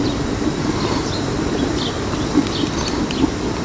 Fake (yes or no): no